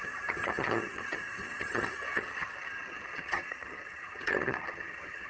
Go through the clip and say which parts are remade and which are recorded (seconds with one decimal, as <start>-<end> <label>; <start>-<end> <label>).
0.0-5.3 remade